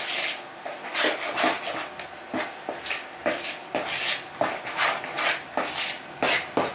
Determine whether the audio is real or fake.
real